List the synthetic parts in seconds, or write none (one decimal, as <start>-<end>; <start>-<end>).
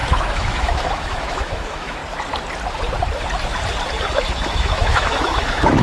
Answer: 0.0-2.0; 4.5-5.8